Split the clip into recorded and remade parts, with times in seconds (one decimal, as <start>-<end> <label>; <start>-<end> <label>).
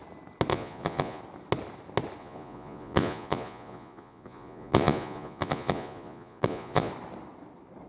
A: 0.0-0.5 recorded; 0.5-1.2 remade; 1.2-2.2 recorded; 2.2-6.9 remade; 6.9-7.9 recorded